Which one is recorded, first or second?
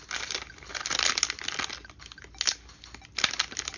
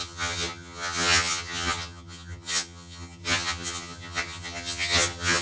first